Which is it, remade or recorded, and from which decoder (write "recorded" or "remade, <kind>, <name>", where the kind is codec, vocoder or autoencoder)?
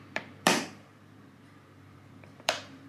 remade, vocoder, BigVGAN v2